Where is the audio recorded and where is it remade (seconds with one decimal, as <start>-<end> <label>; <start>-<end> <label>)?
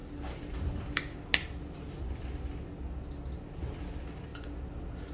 0.0-5.1 recorded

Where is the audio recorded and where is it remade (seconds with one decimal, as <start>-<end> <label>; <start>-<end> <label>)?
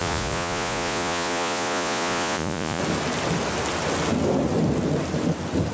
0.0-2.8 remade; 2.8-5.7 recorded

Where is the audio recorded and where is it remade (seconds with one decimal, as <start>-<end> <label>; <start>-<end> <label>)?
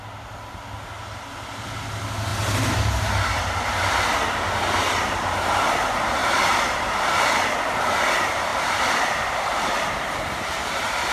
0.0-2.3 recorded; 2.3-3.4 remade; 3.4-6.2 recorded; 6.2-8.0 remade; 8.0-8.5 recorded; 8.5-11.1 remade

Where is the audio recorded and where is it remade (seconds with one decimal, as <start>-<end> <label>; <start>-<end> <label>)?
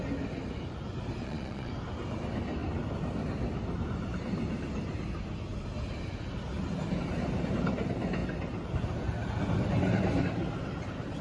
0.0-1.2 recorded; 1.2-1.7 remade; 1.7-11.2 recorded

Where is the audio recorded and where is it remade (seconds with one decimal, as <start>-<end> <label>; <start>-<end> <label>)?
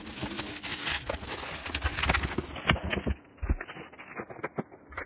0.0-5.1 recorded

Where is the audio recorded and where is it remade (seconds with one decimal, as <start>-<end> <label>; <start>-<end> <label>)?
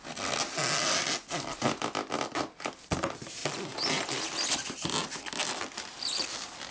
0.0-6.7 recorded